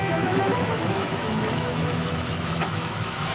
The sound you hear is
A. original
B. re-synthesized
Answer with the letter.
B